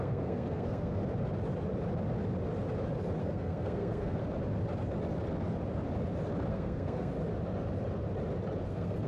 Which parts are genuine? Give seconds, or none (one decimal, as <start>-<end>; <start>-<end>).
1.0-3.2; 4.2-6.5; 7.1-8.7